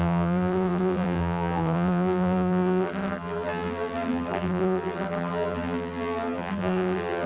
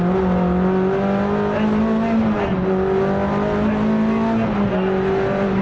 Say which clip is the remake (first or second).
first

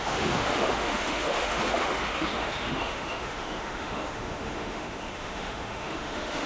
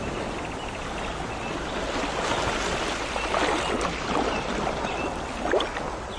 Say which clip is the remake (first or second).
first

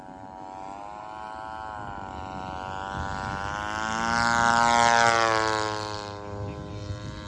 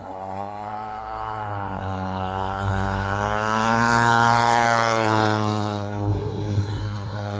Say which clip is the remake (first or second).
second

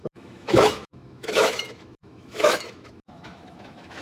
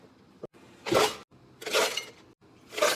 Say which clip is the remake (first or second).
first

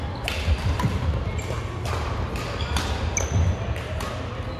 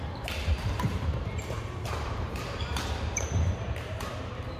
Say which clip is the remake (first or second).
second